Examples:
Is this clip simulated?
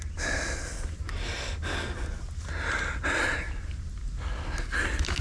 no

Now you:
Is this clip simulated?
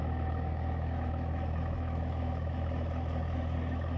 yes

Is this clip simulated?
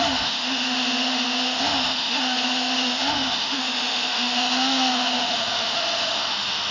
yes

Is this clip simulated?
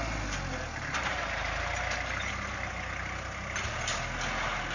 no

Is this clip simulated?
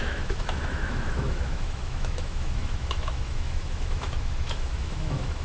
yes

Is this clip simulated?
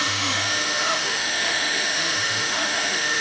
yes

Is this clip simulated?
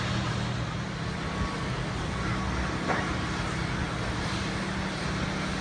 no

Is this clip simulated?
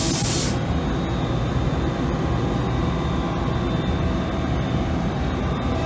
no